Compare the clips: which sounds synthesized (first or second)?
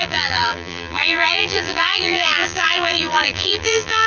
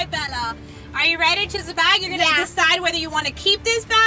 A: first